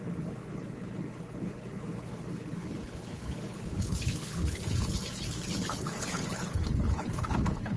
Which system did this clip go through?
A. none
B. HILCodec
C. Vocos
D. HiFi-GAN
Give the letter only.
B